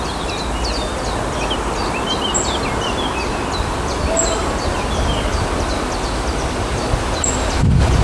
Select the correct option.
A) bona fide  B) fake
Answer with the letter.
A